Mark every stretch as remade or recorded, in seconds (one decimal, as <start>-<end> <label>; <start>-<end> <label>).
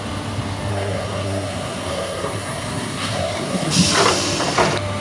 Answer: 0.0-0.7 recorded; 0.7-3.7 remade; 3.7-5.0 recorded